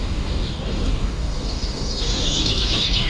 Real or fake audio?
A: fake